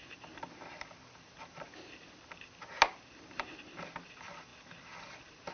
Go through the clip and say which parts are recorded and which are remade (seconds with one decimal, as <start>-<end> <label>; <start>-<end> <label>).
0.0-0.9 remade; 0.9-1.4 recorded; 1.4-2.0 remade; 2.0-2.9 recorded; 2.9-3.6 remade; 3.6-5.5 recorded